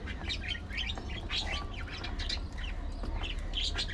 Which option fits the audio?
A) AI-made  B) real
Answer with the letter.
B